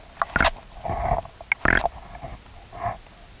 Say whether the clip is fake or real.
real